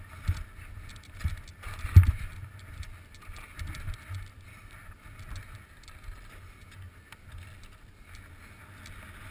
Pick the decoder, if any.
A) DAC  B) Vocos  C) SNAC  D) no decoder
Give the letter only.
D